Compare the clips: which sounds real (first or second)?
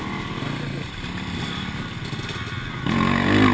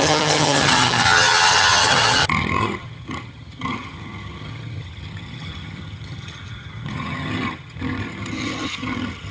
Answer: first